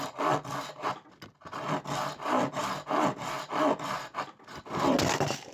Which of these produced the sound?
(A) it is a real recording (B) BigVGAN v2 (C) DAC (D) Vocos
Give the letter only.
A